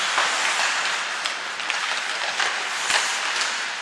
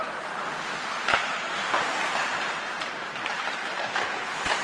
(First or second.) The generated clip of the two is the second